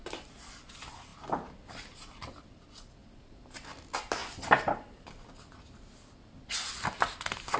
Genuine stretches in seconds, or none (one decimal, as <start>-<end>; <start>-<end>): 0.0-7.6